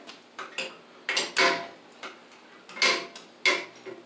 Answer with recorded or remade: recorded